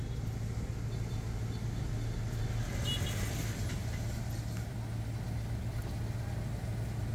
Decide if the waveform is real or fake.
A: real